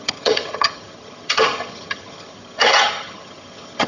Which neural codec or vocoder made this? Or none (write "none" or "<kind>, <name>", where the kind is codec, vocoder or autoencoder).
vocoder, HiFi-GAN